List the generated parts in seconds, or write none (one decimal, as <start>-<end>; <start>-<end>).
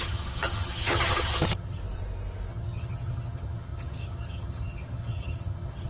0.0-1.8; 2.5-5.9